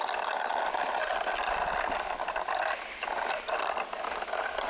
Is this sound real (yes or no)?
yes